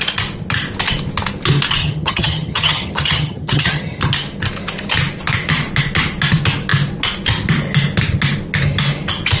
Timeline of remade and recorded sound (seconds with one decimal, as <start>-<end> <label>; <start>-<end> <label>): 0.0-1.8 recorded; 1.8-4.0 remade; 4.0-9.4 recorded